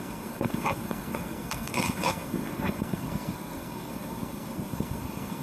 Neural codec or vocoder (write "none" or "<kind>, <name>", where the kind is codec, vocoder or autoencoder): codec, SNAC